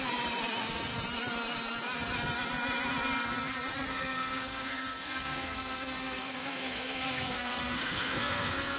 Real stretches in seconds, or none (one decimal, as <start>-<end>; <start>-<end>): 0.0-3.9